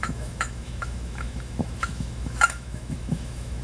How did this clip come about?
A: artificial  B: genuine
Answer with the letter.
A